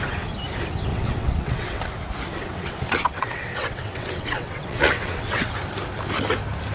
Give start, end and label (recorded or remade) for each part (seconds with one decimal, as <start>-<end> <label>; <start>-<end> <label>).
0.0-0.9 recorded; 0.9-1.8 remade; 1.8-2.4 recorded; 2.4-5.5 remade; 5.5-6.7 recorded

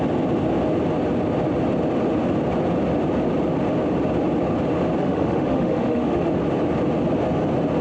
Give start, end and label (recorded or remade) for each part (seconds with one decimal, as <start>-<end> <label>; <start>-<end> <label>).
0.0-5.0 recorded; 5.0-6.3 remade; 6.3-7.8 recorded

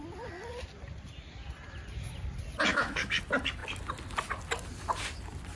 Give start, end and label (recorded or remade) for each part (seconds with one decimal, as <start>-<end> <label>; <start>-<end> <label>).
0.0-2.7 recorded; 2.7-3.2 remade; 3.2-5.5 recorded